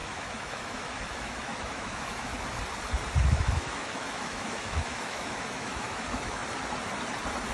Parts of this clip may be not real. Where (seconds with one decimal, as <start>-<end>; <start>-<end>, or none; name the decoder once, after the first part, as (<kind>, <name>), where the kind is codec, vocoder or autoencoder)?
0.0-2.3 (autoencoder, DAC-VAE); 3.3-6.4